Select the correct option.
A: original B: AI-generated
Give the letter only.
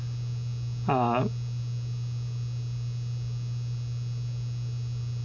A